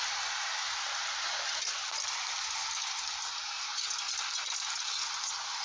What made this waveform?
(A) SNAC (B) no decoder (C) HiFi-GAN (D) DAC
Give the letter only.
B